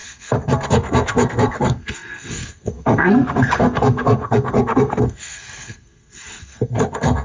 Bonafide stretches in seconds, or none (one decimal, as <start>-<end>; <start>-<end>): none